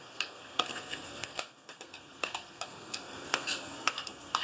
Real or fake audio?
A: fake